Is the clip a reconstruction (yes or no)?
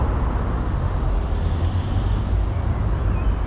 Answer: no